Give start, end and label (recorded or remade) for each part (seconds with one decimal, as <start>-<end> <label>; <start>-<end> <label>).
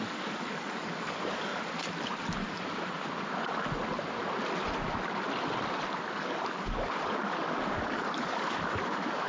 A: 0.0-1.5 remade; 1.5-6.1 recorded; 6.1-9.3 remade